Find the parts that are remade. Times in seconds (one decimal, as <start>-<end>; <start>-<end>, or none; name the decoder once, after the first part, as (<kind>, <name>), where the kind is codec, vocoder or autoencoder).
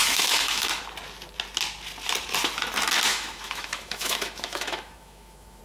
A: 0.0-0.8 (autoencoder, DAC-VAE); 3.1-5.6